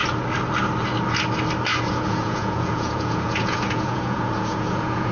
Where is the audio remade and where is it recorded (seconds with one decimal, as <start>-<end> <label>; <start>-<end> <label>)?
0.0-1.7 recorded; 1.7-5.1 remade